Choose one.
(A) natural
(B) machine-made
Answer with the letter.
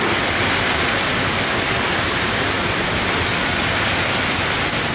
A